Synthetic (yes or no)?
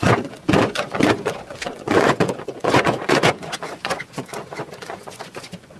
yes